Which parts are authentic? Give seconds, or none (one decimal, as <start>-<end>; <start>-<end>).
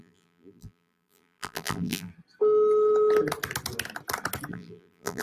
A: 2.1-4.5